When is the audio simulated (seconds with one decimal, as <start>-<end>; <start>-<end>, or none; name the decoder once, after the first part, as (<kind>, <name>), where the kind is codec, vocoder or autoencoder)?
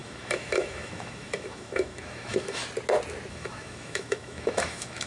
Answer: 0.0-2.6 (autoencoder, DAC-VAE); 3.3-5.1